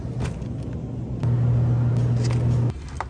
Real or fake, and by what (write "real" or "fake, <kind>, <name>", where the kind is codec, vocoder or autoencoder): real